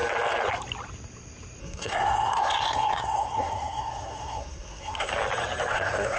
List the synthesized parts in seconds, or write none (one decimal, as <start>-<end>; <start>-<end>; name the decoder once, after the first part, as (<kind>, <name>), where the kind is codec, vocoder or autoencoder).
1.6-5.1 (codec, SNAC); 5.7-6.2